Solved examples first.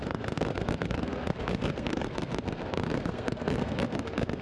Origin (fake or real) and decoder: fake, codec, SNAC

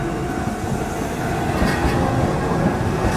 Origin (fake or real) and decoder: real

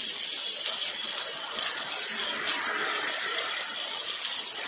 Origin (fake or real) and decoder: real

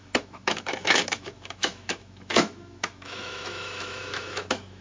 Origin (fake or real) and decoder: fake, autoencoder, DAC-VAE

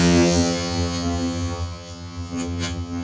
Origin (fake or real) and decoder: fake, vocoder, HiFi-GAN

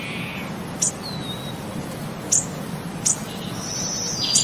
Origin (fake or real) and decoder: real